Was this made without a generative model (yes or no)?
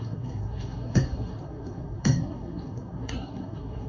no